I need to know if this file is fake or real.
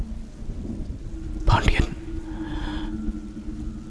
real